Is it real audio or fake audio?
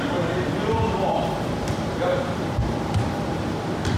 real